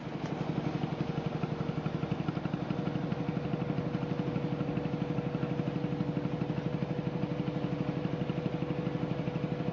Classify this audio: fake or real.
real